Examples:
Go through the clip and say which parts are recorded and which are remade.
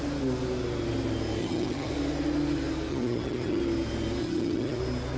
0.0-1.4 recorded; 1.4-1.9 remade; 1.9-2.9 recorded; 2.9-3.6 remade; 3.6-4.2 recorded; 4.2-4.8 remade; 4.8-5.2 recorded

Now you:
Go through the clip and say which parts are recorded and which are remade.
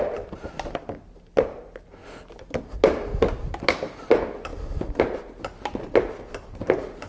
0.0-7.1 recorded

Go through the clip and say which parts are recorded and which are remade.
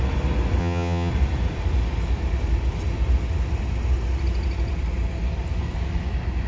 0.0-0.6 recorded; 0.6-1.1 remade; 1.1-6.5 recorded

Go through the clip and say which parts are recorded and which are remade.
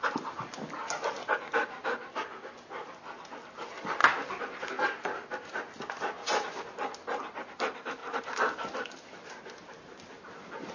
0.0-10.7 recorded